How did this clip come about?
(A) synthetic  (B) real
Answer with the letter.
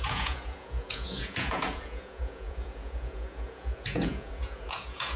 A